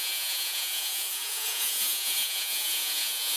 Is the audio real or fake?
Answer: fake